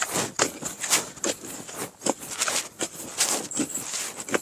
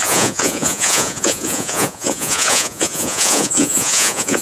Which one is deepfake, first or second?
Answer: second